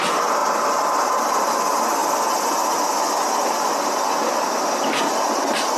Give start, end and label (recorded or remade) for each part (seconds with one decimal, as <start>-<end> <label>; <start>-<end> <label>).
0.0-5.8 recorded